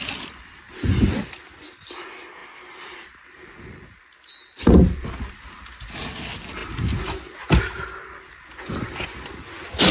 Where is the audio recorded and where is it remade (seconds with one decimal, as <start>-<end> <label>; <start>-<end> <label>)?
0.0-9.9 recorded